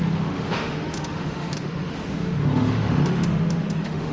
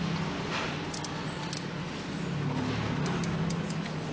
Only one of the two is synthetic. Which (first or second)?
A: first